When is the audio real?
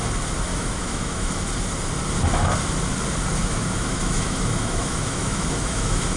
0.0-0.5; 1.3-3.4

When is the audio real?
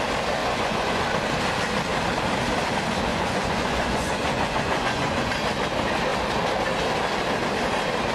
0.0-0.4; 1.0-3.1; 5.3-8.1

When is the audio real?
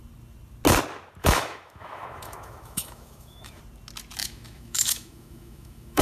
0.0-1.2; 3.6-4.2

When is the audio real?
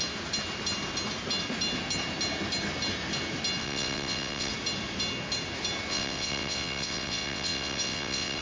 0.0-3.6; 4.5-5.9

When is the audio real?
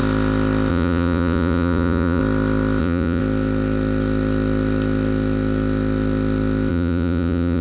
0.0-0.7; 2.2-2.8; 3.2-6.7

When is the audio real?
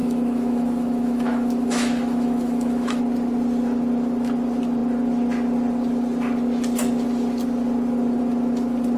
3.0-9.0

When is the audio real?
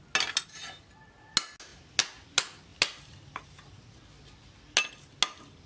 0.0-5.7